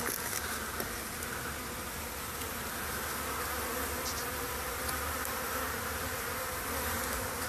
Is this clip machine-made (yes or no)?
no